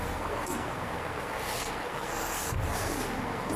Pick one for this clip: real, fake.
fake